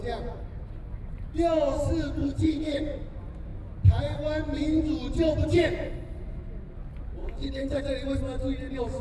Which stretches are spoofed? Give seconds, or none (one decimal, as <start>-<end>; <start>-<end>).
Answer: 2.2-2.8; 7.2-7.8